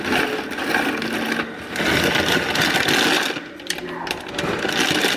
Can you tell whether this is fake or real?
real